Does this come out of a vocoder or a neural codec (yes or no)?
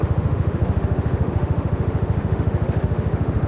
yes